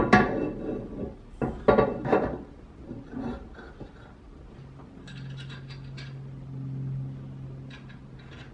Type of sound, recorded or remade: recorded